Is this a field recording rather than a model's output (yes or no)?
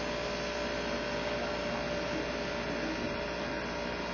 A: yes